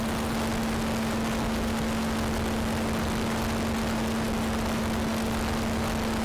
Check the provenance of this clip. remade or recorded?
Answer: recorded